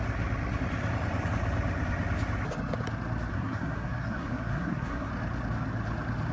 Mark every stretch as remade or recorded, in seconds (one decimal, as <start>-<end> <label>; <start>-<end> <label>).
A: 0.0-3.3 recorded; 3.3-5.1 remade; 5.1-6.3 recorded